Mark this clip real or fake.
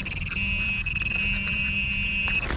fake